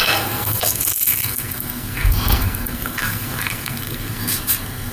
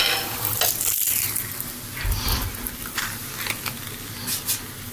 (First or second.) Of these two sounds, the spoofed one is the first